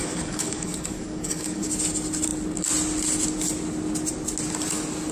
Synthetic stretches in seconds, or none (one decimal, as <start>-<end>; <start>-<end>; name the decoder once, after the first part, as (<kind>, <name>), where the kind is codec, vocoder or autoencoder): 0.0-1.7 (codec, DAC)